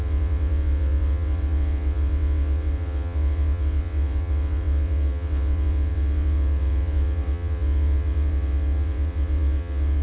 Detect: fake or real fake